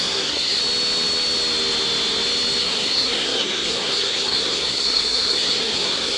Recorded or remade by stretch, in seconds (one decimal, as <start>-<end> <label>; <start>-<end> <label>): 0.0-0.6 remade; 0.6-2.6 recorded; 2.6-6.2 remade